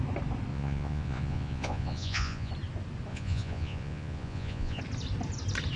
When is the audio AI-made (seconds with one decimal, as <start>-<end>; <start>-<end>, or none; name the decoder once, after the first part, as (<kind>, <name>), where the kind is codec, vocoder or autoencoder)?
0.5-2.5 (vocoder, Vocos); 3.1-4.8